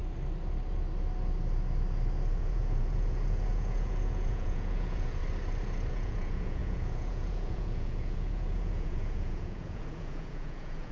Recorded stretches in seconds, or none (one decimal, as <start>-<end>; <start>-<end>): 0.0-2.4; 5.2-5.9